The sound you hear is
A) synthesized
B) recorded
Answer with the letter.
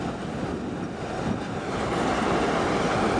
B